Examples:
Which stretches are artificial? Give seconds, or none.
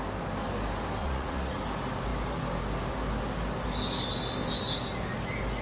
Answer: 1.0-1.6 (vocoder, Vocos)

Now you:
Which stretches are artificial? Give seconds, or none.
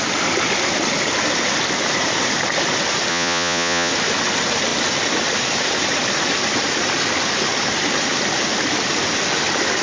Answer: 3.1-3.9 (vocoder, Vocos)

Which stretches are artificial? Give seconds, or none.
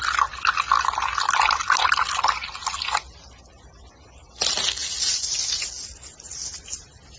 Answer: none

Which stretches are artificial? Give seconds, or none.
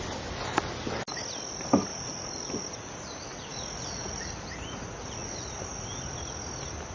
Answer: 1.9-6.0 (vocoder, Vocos)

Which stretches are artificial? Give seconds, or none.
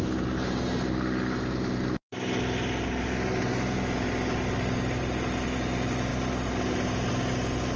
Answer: none